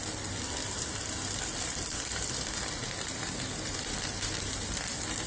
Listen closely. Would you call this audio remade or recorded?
remade